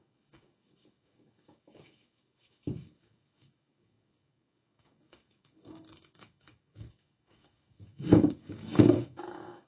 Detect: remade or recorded remade